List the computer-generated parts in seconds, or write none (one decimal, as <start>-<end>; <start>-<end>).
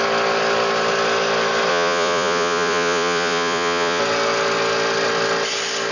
1.7-4.0